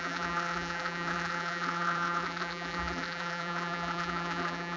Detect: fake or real fake